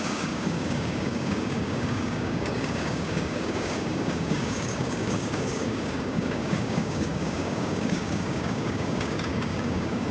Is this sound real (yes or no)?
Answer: no